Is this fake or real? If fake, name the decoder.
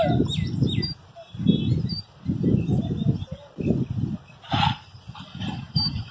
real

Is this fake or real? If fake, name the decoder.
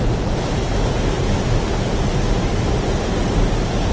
real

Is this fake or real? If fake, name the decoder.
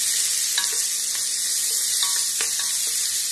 real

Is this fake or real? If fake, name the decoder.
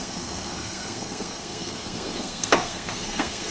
fake, codec, SNAC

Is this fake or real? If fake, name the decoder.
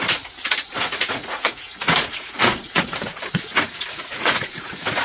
fake, vocoder, Vocos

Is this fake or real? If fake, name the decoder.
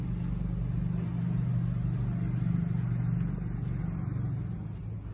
real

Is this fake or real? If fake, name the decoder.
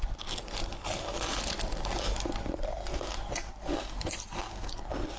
real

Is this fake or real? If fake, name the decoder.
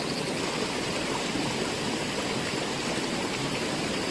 real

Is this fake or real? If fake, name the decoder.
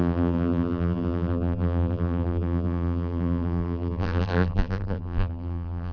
fake, vocoder, BigVGAN v2